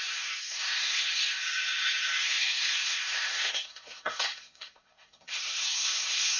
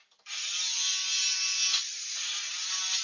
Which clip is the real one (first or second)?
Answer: second